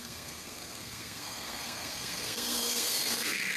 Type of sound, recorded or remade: remade